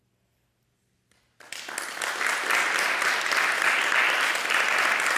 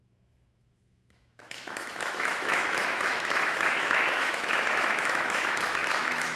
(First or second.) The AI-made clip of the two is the second